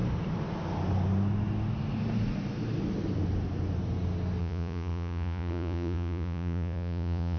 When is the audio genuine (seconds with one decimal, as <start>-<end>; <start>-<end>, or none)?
0.0-4.4